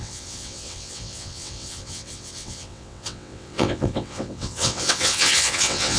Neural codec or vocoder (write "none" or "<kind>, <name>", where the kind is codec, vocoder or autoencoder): vocoder, WaveNeXt